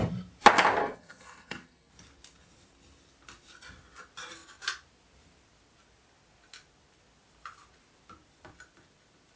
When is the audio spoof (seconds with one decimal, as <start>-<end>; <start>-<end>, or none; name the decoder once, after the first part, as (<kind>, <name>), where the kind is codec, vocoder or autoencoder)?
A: 0.8-1.9 (codec, SNAC)

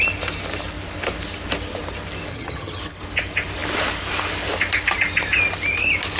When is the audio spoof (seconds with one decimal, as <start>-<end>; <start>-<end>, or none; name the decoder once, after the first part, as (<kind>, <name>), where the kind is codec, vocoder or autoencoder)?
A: 2.3-2.8 (vocoder, HiFi-GAN)

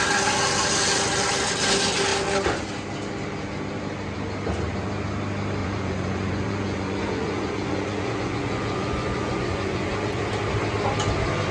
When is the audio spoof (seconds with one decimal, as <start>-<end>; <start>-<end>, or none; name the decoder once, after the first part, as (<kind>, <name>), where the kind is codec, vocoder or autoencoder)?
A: 5.6-10.2 (vocoder, Vocos)

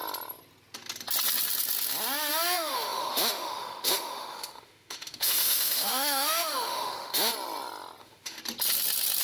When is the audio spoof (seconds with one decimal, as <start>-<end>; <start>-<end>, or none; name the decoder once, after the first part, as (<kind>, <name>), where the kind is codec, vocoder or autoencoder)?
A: 2.3-7.3 (autoencoder, DAC-VAE); 8.0-8.4